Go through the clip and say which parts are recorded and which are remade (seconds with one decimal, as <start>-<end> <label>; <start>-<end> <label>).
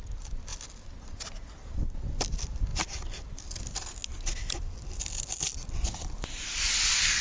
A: 0.0-4.0 remade; 4.0-5.6 recorded; 5.6-7.2 remade